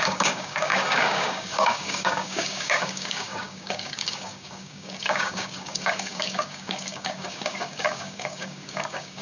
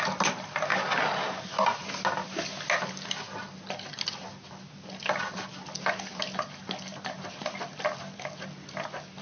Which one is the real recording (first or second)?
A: second